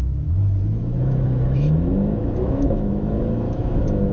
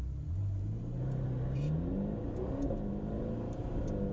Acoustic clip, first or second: second